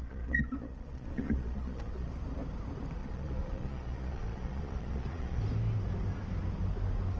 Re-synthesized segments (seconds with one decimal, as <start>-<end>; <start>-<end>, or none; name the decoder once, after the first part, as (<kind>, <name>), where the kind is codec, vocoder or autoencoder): 0.0-2.1 (vocoder, Vocos); 3.0-5.4